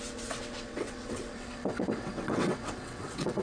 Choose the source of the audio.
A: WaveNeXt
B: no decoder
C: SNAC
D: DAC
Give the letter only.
A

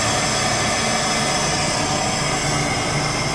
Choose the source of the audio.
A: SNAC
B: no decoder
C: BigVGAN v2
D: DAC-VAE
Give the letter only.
B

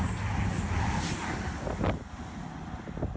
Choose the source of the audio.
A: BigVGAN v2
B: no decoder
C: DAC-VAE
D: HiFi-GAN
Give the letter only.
B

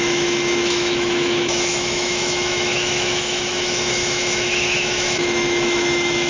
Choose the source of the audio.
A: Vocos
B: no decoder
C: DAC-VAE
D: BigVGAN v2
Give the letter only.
C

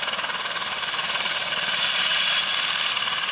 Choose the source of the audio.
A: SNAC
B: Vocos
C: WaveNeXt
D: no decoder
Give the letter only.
D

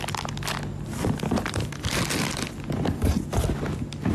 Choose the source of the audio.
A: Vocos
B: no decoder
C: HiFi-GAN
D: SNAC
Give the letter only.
B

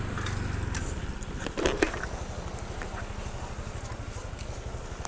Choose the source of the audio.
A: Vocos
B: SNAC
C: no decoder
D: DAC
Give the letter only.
C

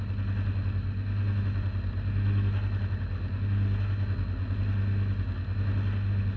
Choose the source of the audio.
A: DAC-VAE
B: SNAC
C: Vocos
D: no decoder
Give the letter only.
D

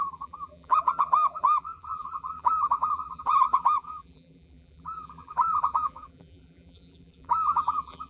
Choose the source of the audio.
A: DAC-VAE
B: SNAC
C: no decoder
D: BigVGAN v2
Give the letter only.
D